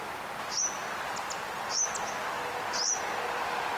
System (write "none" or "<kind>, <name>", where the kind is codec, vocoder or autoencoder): none